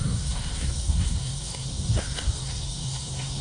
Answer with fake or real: fake